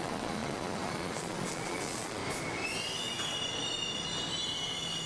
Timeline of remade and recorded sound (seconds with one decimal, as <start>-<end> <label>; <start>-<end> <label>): 0.0-2.2 remade; 2.2-5.1 recorded